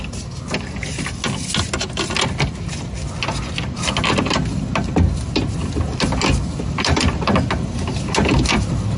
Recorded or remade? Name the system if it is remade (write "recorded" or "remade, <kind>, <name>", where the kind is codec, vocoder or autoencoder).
recorded